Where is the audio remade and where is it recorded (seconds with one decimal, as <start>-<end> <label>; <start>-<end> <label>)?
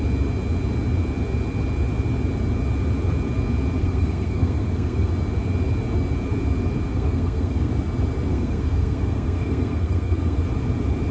0.0-3.8 recorded; 3.8-5.1 remade; 5.1-6.9 recorded; 6.9-7.7 remade; 7.7-8.3 recorded; 8.3-10.4 remade; 10.4-11.1 recorded